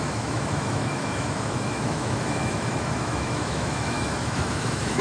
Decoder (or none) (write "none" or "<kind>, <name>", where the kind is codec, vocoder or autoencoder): autoencoder, DAC-VAE